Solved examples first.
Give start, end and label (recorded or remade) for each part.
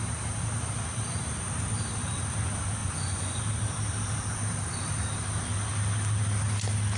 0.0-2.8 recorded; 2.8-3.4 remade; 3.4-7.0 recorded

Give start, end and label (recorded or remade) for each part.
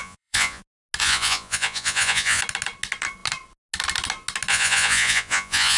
0.0-0.6 remade; 0.6-1.0 recorded; 1.0-2.4 remade; 2.4-4.5 recorded; 4.5-5.8 remade